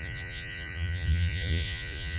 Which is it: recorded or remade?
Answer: remade